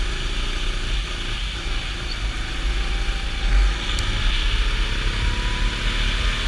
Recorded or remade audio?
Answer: recorded